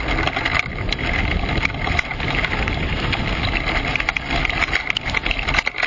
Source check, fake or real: real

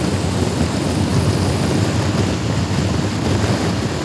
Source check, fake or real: real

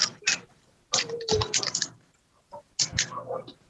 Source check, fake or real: real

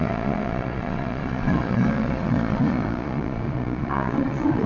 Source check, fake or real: fake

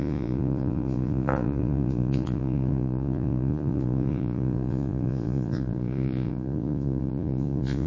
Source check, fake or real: fake